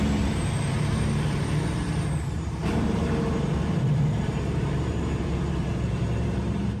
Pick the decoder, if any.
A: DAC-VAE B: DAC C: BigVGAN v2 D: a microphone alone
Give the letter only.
C